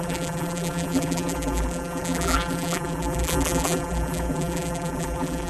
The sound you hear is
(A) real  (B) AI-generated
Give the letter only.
B